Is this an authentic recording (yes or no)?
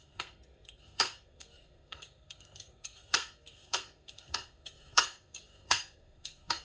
no